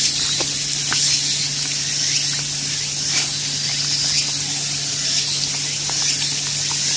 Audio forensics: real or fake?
real